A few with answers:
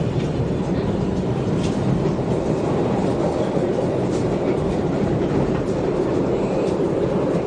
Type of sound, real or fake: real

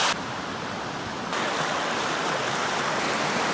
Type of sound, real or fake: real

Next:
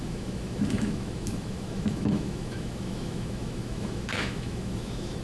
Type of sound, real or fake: fake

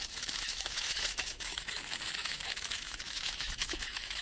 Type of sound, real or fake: fake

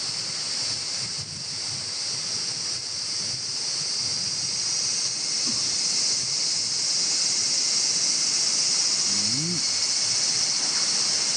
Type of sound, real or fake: real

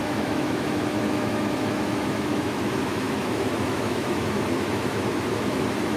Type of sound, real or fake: fake